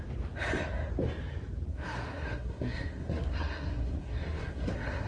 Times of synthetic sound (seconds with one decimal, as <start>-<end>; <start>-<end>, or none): 1.7-5.1